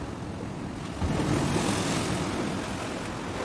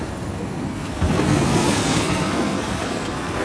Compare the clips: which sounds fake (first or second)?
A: second